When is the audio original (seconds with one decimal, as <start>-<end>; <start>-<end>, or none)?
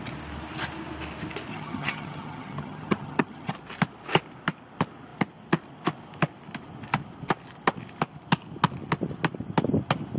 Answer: 0.0-1.5; 3.5-10.2